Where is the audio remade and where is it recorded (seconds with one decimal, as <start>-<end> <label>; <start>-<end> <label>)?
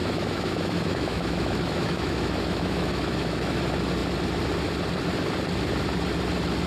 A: 0.0-3.6 remade; 3.6-6.7 recorded